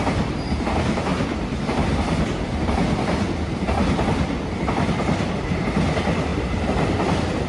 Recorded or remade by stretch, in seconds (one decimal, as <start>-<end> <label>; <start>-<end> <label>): 0.0-6.3 remade; 6.3-7.5 recorded